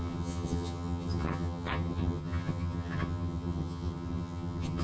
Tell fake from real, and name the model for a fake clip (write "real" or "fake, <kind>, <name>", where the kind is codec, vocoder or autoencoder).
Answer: fake, vocoder, HiFi-GAN